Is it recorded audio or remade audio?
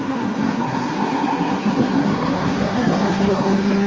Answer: remade